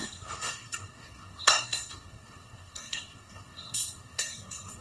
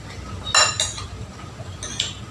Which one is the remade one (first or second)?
first